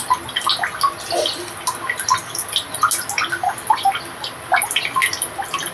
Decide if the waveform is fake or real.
real